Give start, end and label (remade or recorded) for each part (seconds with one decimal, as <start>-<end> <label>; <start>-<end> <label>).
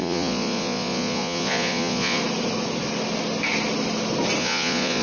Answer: 0.0-2.2 remade; 2.2-4.4 recorded; 4.4-5.0 remade